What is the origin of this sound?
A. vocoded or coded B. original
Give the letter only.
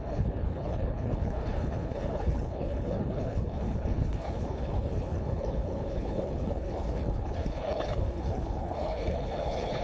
A